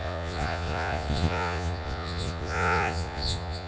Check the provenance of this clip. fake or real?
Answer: fake